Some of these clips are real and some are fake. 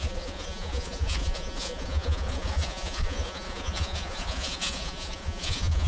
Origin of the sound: fake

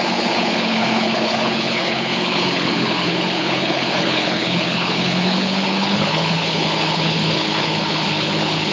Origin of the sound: fake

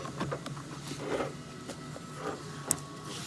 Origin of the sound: real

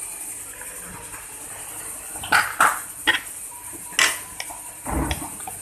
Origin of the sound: real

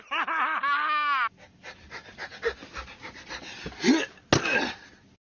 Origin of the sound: real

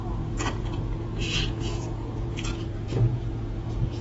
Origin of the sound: fake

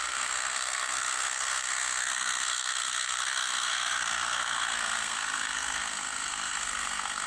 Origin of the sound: fake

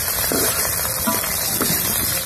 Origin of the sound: real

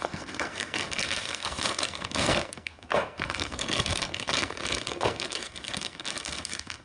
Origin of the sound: fake